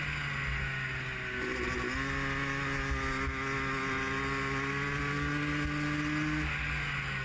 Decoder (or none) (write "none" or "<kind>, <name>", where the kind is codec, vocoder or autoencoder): none